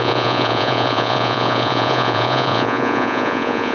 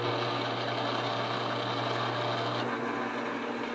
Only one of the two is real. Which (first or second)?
second